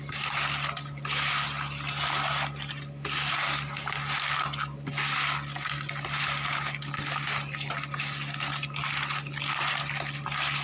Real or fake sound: real